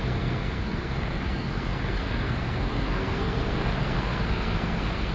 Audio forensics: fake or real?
fake